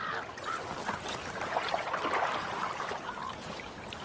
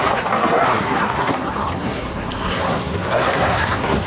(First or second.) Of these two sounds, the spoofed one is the second